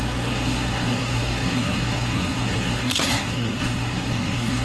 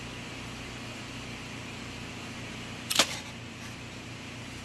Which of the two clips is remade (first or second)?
first